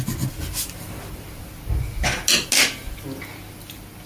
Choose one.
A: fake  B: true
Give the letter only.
B